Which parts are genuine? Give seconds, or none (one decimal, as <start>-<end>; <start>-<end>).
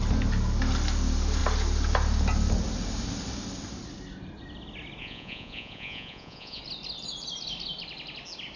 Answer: 0.0-5.0; 6.6-8.6